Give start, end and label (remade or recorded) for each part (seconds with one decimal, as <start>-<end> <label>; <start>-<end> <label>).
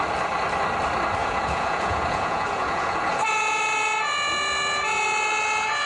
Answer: 0.0-1.2 recorded; 1.2-3.6 remade; 3.6-5.9 recorded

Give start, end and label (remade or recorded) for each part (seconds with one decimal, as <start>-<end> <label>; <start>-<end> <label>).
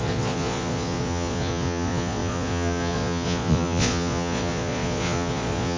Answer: 0.0-5.8 remade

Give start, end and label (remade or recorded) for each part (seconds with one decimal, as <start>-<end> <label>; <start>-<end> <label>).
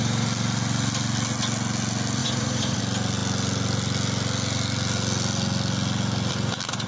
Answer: 0.0-2.2 recorded; 2.2-2.8 remade; 2.8-6.9 recorded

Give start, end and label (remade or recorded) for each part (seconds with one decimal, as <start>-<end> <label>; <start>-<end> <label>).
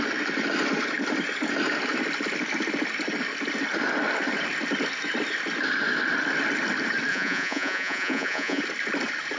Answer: 0.0-7.1 recorded; 7.1-8.6 remade; 8.6-9.4 recorded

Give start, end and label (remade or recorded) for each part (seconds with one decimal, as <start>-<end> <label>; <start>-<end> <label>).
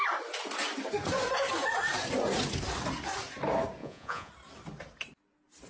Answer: 0.0-3.8 recorded; 3.8-4.3 remade; 4.3-5.7 recorded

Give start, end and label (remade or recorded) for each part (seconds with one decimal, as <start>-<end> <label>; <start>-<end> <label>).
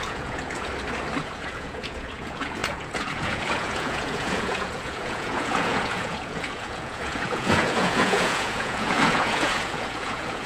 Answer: 0.0-0.7 remade; 0.7-1.2 recorded; 1.2-10.5 remade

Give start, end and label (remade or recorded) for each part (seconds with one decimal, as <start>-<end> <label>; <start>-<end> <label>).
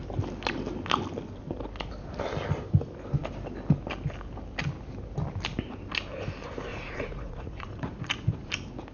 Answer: 0.0-6.7 recorded; 6.7-8.5 remade; 8.5-8.9 recorded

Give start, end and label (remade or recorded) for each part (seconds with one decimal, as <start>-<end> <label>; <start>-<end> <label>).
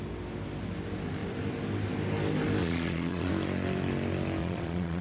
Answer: 0.0-2.6 recorded; 2.6-3.3 remade; 3.3-4.4 recorded; 4.4-5.0 remade